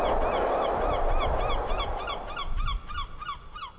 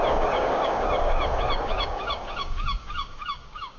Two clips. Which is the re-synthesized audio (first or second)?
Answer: second